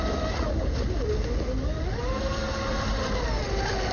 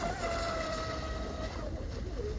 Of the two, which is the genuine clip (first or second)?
first